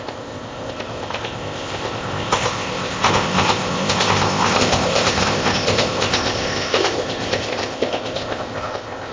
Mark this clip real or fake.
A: fake